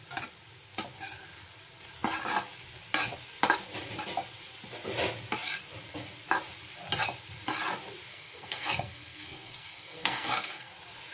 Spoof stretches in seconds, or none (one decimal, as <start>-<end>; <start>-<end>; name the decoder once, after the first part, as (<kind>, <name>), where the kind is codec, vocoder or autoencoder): 8.1-10.7 (codec, SNAC)